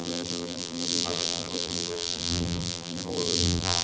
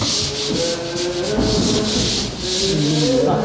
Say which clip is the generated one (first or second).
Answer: first